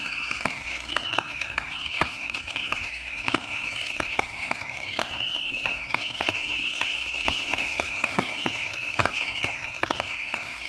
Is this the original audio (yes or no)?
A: no